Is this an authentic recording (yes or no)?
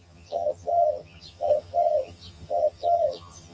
no